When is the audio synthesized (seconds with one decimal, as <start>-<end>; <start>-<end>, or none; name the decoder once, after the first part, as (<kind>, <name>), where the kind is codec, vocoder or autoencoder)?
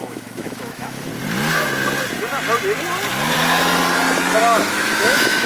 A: 0.0-1.1 (autoencoder, DAC-VAE); 4.4-5.5